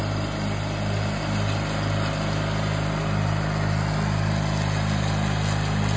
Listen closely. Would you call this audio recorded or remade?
recorded